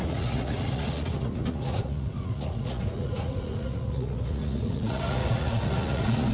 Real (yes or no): no